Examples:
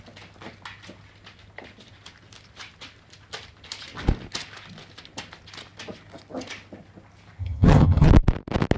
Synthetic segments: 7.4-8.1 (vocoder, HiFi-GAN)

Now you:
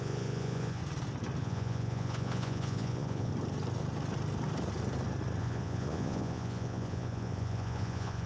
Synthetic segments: 0.0-0.8 (vocoder, Vocos); 1.4-3.3; 5.4-8.3

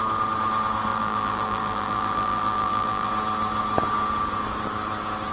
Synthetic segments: 0.9-3.1 (vocoder, BigVGAN v2)

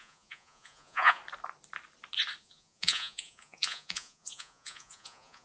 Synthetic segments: 0.0-1.2 (vocoder, Vocos); 2.4-5.4

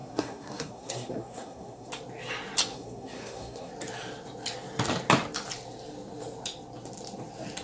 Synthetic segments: 0.0-1.9 (codec, SNAC); 2.7-3.7